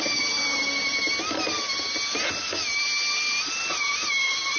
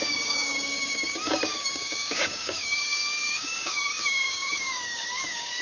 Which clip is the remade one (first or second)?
second